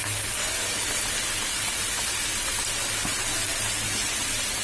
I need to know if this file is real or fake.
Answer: real